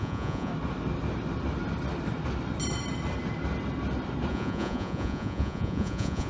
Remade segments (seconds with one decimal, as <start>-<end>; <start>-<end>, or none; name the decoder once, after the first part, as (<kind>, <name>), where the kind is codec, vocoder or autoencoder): 0.0-0.5 (vocoder, Vocos); 4.3-6.3